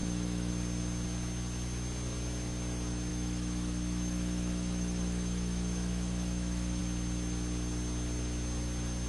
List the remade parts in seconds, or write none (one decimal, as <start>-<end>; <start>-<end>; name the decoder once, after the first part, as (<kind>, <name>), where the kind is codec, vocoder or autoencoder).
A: 0.0-0.5 (autoencoder, DAC-VAE); 3.1-6.8